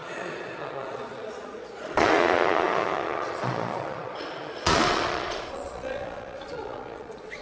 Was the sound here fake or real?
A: fake